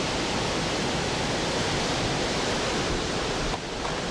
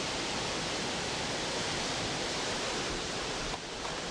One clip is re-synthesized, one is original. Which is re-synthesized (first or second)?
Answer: second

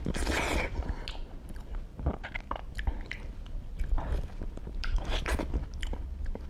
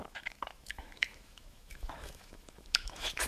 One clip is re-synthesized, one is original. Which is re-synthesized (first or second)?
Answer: second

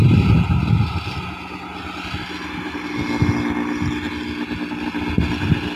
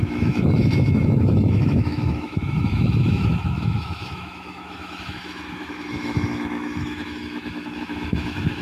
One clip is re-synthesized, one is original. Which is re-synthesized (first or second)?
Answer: second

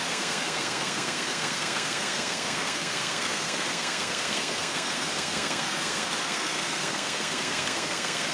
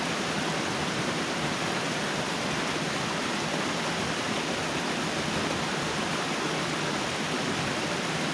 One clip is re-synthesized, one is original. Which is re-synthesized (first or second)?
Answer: first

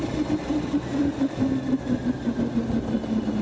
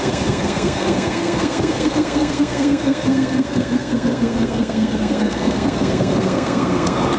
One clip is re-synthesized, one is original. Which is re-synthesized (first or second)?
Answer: second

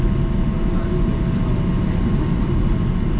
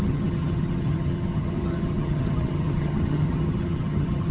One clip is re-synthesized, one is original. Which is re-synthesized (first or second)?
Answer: second